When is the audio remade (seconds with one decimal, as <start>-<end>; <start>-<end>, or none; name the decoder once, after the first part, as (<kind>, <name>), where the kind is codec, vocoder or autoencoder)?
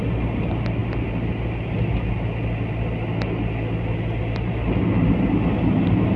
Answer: none